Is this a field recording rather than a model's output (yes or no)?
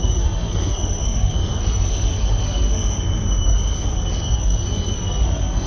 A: no